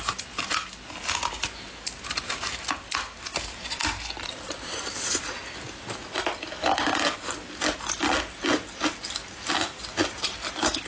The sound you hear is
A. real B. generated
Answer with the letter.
A